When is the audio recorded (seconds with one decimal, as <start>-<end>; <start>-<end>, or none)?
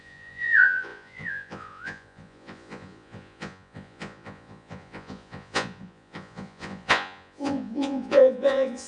none